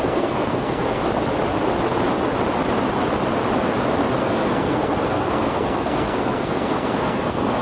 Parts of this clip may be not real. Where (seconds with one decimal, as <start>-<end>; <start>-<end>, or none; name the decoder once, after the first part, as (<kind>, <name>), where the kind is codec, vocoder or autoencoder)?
0.0-1.0 (codec, SNAC); 4.2-7.6